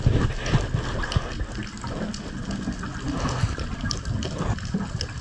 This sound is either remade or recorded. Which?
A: recorded